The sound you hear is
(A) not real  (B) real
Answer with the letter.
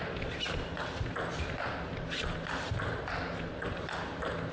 B